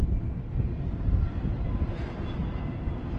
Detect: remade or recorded recorded